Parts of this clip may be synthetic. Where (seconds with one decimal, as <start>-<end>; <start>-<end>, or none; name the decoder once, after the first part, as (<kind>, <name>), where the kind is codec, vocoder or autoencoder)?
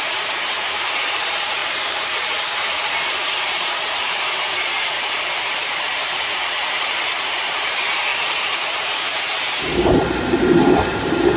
0.0-11.4 (vocoder, BigVGAN v2)